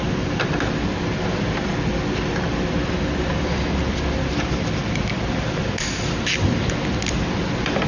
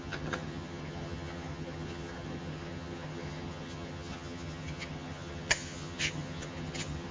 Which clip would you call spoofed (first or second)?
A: second